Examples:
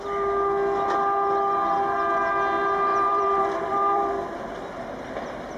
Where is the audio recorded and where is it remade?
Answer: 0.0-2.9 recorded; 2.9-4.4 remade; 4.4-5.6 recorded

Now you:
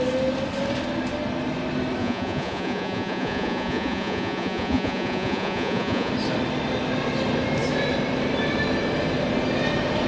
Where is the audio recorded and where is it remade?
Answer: 0.0-2.0 recorded; 2.0-6.1 remade; 6.1-10.1 recorded

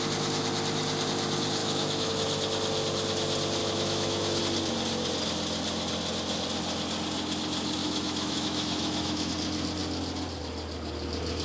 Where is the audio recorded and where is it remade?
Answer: 0.0-1.6 recorded; 1.6-2.1 remade; 2.1-3.6 recorded; 3.6-4.4 remade; 4.4-7.8 recorded; 7.8-9.3 remade; 9.3-11.4 recorded

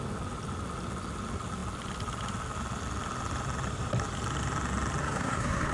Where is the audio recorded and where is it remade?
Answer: 0.0-5.0 recorded; 5.0-5.7 remade

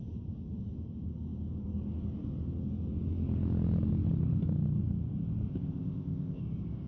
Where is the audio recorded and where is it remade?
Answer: 0.0-5.5 recorded; 5.5-6.4 remade; 6.4-6.9 recorded

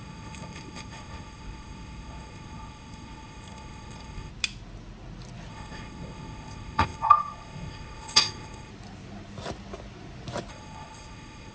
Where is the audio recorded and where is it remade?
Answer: 0.0-4.3 remade; 4.3-5.5 recorded; 5.5-8.7 remade; 8.7-10.5 recorded; 10.5-11.5 remade